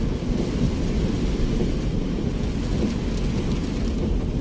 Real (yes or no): yes